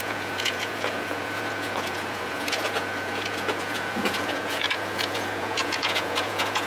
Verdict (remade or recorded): remade